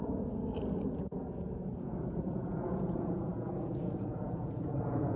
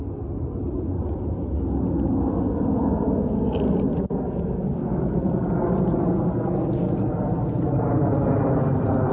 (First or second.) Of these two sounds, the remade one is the first